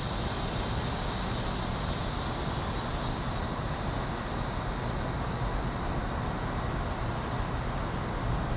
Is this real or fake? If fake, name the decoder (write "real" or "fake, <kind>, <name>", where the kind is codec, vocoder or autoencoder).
real